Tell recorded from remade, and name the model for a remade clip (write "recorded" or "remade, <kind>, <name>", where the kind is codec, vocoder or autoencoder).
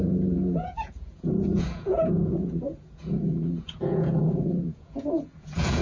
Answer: remade, vocoder, Vocos